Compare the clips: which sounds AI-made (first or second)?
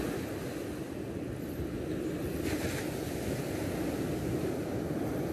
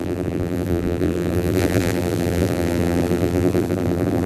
second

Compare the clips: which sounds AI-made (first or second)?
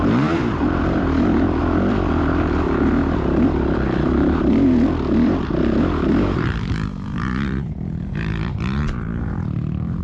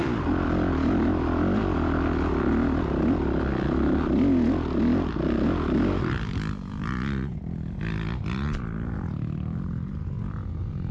first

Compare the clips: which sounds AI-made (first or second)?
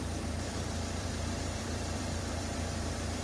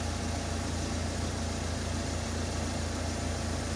first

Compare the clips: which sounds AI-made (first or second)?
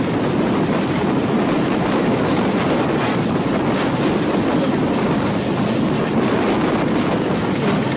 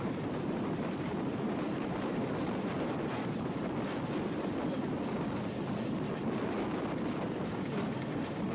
second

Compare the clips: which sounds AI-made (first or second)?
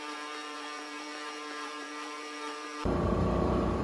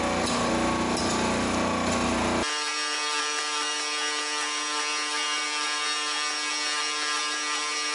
first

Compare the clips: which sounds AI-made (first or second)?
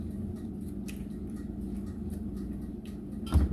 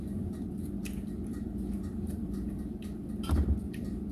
second